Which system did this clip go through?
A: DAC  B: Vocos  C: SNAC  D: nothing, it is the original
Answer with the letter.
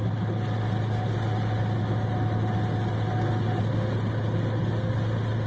D